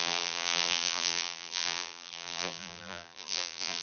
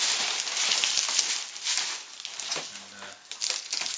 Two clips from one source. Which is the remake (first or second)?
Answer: first